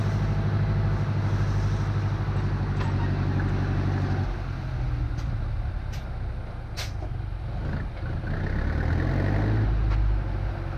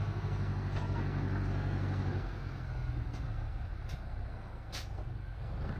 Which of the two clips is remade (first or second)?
second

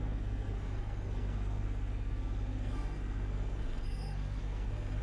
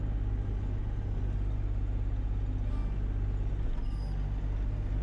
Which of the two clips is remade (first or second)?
first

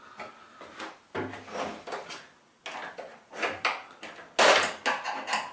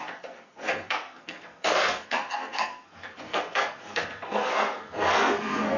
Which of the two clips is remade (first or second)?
second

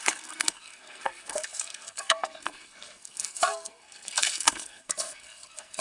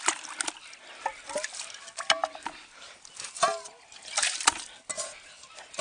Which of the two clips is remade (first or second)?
first